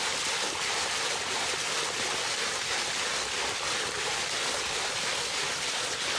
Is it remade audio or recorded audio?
recorded